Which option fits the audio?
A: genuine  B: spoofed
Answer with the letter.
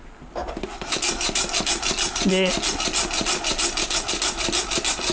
A